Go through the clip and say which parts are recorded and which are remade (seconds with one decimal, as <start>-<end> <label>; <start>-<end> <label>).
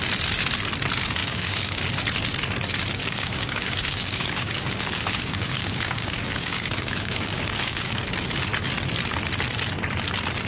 0.0-1.2 recorded; 1.2-1.8 remade; 1.8-3.0 recorded; 3.0-8.0 remade; 8.0-10.5 recorded